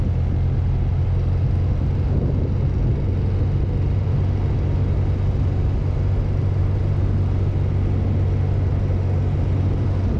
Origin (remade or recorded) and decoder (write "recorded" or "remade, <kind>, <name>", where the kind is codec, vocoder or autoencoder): recorded